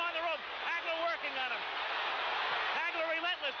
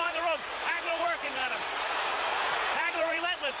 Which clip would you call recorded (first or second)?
first